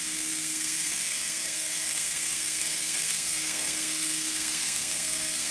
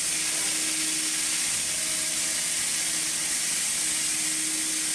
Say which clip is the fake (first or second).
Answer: first